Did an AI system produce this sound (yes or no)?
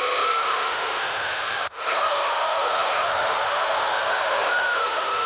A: yes